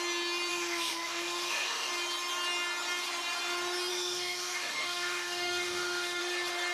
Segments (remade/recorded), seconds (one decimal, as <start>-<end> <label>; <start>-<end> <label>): 0.0-0.5 recorded; 0.5-1.9 remade; 1.9-3.9 recorded; 3.9-6.2 remade; 6.2-6.7 recorded